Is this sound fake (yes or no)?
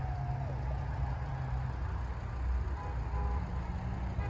no